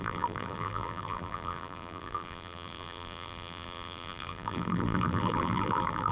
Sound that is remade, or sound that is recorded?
remade